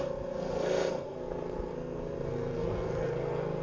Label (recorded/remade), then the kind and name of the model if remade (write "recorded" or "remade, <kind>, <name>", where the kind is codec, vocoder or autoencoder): remade, codec, SNAC